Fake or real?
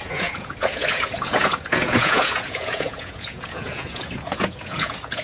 fake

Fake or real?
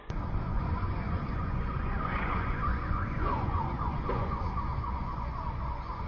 fake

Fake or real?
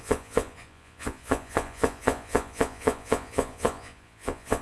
fake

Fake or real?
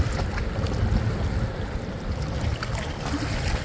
real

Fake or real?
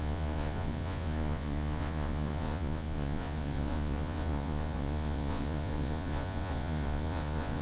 fake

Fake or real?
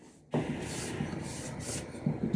real